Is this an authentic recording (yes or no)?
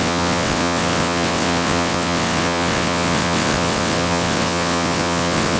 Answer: no